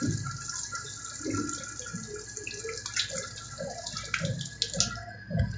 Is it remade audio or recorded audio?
recorded